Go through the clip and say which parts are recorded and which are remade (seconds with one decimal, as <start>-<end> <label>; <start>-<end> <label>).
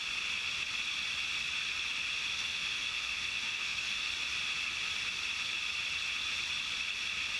0.0-2.3 recorded; 2.3-4.1 remade; 4.1-7.4 recorded